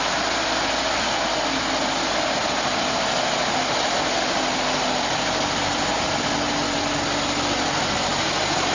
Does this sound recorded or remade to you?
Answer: recorded